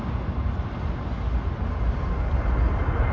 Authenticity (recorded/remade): recorded